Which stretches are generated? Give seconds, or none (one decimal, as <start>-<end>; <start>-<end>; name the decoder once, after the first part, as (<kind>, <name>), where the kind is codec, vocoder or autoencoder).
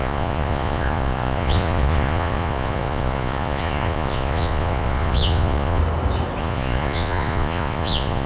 0.0-5.8 (vocoder, Vocos); 6.4-8.3